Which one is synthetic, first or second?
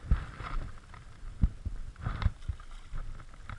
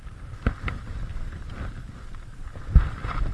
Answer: second